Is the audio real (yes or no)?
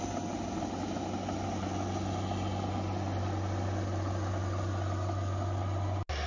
yes